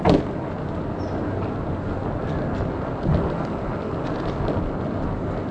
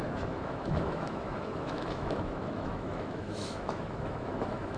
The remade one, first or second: second